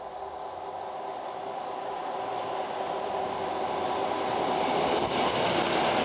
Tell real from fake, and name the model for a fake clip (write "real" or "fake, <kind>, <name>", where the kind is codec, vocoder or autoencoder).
real